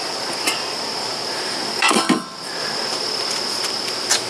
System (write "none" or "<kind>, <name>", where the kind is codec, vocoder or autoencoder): vocoder, BigVGAN v2